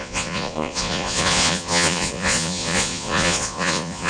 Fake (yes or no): yes